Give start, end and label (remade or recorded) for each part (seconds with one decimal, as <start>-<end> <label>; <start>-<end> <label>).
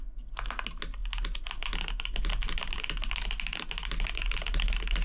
0.0-5.0 recorded